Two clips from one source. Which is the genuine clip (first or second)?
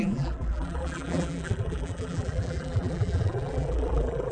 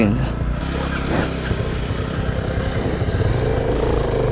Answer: second